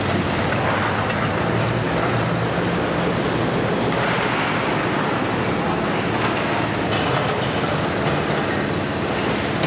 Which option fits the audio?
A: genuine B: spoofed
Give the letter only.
A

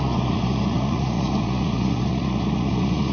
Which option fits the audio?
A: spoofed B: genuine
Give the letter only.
A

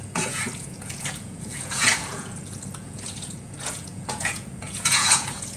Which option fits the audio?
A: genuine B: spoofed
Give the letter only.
B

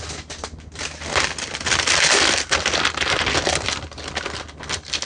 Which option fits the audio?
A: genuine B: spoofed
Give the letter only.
A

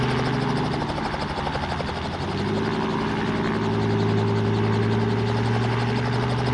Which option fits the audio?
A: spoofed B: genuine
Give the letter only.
B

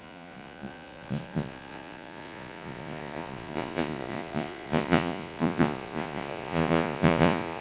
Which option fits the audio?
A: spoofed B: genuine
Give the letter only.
A